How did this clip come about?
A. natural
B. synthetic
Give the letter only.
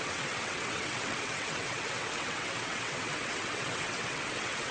B